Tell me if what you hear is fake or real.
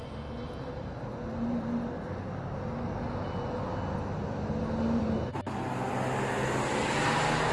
real